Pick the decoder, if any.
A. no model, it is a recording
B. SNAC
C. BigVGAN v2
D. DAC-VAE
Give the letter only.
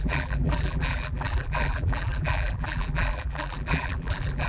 C